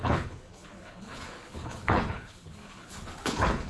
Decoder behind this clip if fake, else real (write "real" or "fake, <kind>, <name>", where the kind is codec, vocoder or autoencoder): fake, codec, HILCodec